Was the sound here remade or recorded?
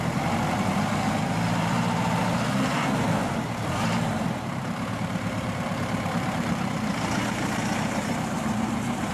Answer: remade